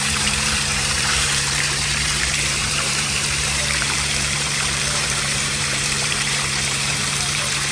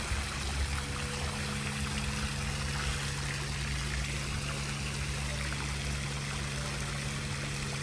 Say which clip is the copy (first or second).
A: first